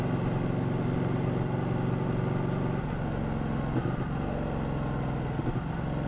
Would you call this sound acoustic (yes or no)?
yes